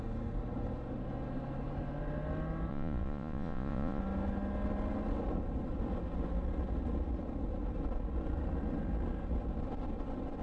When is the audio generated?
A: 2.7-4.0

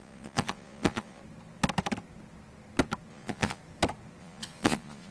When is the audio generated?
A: 0.0-1.2; 3.1-3.6; 4.2-5.1